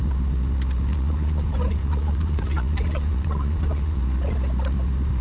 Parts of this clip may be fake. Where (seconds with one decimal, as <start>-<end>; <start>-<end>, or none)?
0.9-4.0